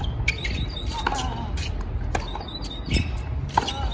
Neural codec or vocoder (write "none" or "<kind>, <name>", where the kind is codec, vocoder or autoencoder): none